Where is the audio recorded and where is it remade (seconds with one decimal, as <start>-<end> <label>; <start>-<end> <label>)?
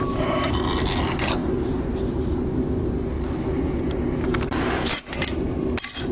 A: 0.0-6.1 recorded